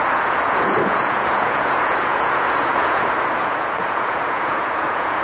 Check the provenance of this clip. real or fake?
fake